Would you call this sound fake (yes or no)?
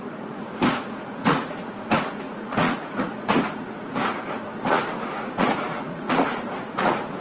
yes